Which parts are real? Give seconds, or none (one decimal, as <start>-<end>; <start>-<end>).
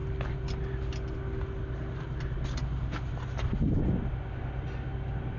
0.0-5.4